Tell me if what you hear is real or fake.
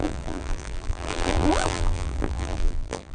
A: fake